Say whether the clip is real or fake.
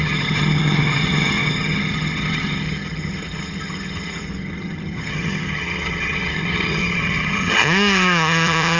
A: fake